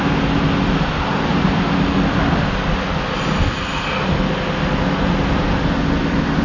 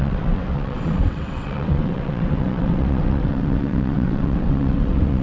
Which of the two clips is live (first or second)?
first